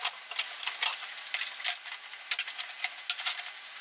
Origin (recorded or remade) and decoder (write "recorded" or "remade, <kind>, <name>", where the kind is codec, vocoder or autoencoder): recorded